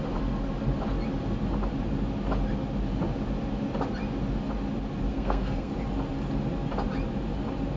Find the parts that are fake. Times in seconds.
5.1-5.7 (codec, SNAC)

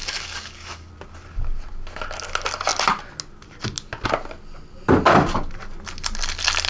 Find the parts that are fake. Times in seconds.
0.0-0.9 (codec, DAC)

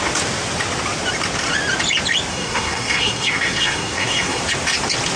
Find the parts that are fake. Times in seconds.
2.3-4.4 (codec, SNAC)

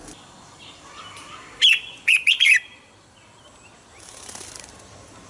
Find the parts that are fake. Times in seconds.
1.7-2.5 (vocoder, Vocos)

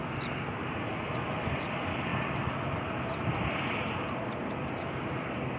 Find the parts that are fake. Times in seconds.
none

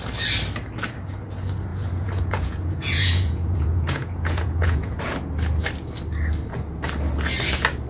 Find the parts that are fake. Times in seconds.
1.7-5.0 (vocoder, Vocos)

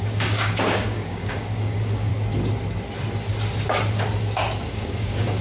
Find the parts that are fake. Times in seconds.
0.0-2.1 (codec, DAC); 4.7-5.4

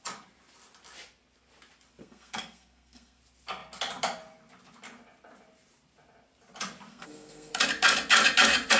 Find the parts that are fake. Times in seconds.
2.0-3.2 (codec, SNAC); 6.9-7.5